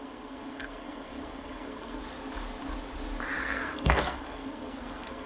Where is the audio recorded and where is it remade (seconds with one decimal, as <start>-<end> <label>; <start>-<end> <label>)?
0.0-2.0 remade; 2.0-3.4 recorded; 3.4-5.3 remade